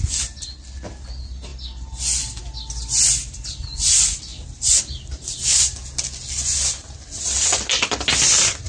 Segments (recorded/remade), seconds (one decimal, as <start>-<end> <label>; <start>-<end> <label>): 0.0-8.7 recorded